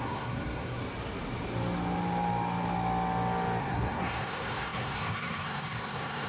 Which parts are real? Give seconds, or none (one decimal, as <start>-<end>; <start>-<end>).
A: 0.8-3.6